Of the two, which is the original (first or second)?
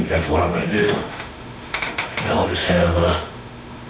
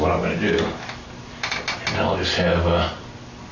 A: second